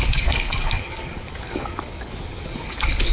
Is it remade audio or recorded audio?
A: remade